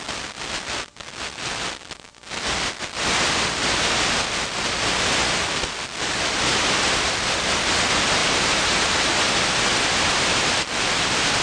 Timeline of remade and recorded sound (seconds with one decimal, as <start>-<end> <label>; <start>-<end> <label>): 0.0-11.4 recorded